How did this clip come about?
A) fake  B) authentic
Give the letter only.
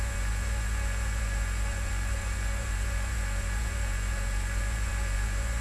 A